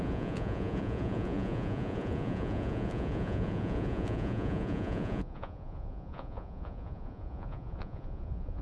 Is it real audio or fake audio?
fake